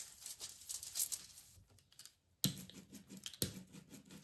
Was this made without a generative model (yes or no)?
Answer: yes